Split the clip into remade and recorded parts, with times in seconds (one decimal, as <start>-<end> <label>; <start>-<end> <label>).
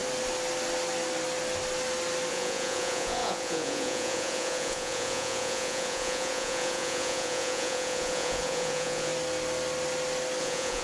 0.0-2.3 recorded; 2.3-9.1 remade; 9.1-10.4 recorded; 10.4-10.8 remade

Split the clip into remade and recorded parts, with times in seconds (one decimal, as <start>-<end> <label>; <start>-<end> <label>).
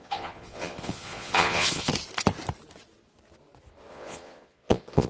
0.0-1.9 remade; 1.9-3.9 recorded; 3.9-5.1 remade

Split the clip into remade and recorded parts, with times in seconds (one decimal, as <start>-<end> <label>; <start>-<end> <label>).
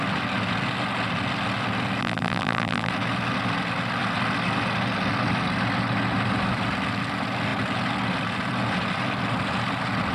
0.0-2.0 recorded; 2.0-2.9 remade; 2.9-10.1 recorded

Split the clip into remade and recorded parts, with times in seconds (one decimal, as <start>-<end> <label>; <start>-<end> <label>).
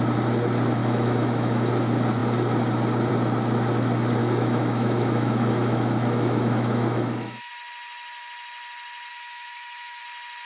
0.0-0.8 recorded; 0.8-1.7 remade; 1.7-4.2 recorded; 4.2-7.5 remade; 7.5-9.1 recorded; 9.1-10.0 remade; 10.0-10.5 recorded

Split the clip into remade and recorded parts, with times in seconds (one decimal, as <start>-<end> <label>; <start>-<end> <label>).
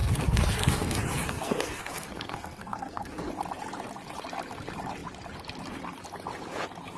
0.0-3.3 remade; 3.3-7.0 recorded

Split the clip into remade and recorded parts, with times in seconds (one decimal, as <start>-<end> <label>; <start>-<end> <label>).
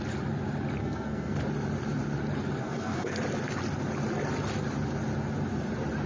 0.0-0.8 recorded; 0.8-1.4 remade; 1.4-2.6 recorded; 2.6-3.2 remade; 3.2-6.1 recorded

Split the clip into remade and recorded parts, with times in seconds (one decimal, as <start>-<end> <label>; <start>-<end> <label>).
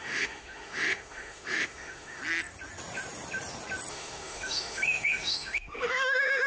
0.0-2.2 remade; 2.2-3.9 recorded; 3.9-6.5 remade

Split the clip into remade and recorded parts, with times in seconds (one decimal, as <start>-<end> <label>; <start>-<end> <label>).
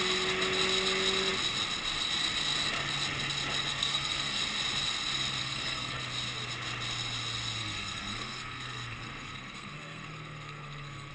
0.0-3.7 recorded; 3.7-4.4 remade; 4.4-5.4 recorded; 5.4-6.0 remade; 6.0-7.6 recorded; 7.6-11.1 remade